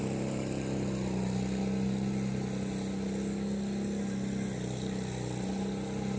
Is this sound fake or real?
real